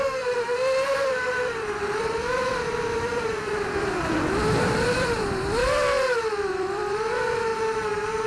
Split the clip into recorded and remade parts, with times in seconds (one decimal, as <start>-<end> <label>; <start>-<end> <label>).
0.0-5.6 remade; 5.6-6.2 recorded; 6.2-7.5 remade; 7.5-8.3 recorded